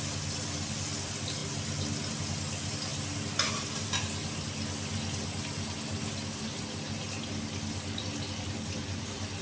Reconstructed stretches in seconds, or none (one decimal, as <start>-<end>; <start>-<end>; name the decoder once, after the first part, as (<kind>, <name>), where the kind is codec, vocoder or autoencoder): none